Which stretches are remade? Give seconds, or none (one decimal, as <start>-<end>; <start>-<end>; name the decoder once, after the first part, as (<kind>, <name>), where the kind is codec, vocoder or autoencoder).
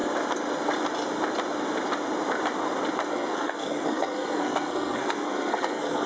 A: 3.1-6.1 (codec, SNAC)